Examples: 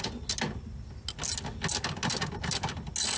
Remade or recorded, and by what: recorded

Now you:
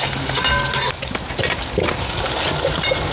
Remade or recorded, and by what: recorded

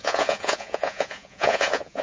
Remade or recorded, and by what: remade, vocoder, Vocos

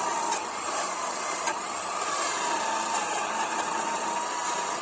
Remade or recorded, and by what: recorded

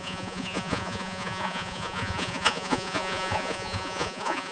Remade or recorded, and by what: remade, vocoder, Vocos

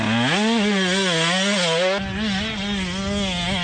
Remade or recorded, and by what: recorded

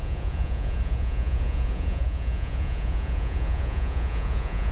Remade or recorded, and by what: remade, vocoder, Vocos